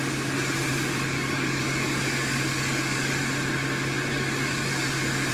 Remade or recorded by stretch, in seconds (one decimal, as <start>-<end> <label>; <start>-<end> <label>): 0.0-0.7 recorded; 0.7-3.2 remade; 3.2-4.1 recorded; 4.1-5.3 remade

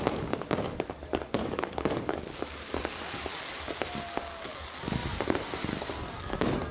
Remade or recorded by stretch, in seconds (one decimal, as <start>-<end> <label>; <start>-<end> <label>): 0.0-3.3 remade; 3.3-4.2 recorded; 4.2-5.0 remade; 5.0-6.0 recorded; 6.0-6.7 remade

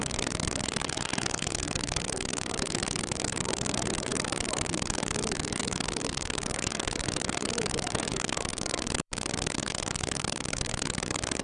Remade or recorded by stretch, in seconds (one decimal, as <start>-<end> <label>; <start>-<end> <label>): 0.0-11.4 remade

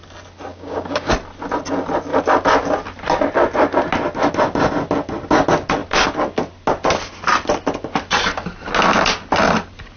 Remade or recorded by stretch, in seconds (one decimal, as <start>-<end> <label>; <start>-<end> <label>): 0.0-0.5 recorded; 0.5-1.1 remade; 1.1-10.0 recorded

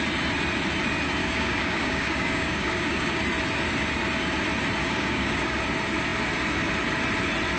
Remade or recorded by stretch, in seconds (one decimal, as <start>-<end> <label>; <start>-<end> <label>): 0.0-1.2 recorded; 1.2-3.2 remade; 3.2-4.8 recorded; 4.8-5.6 remade; 5.6-7.6 recorded